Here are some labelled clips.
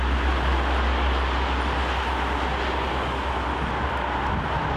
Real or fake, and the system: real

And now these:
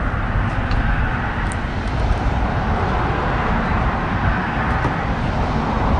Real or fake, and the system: real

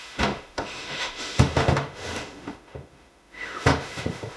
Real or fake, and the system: fake, autoencoder, DAC-VAE